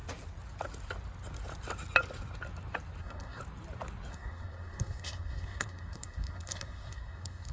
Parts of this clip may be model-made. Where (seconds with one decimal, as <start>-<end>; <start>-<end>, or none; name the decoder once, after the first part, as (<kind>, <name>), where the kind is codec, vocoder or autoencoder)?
3.0-3.4 (codec, SNAC); 4.1-7.5